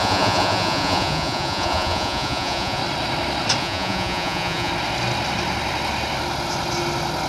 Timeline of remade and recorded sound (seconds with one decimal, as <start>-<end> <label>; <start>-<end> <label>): 0.0-2.8 remade; 2.8-3.6 recorded; 3.6-4.7 remade; 4.7-7.3 recorded